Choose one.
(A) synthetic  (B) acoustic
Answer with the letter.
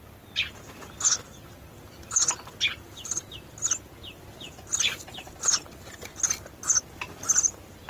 B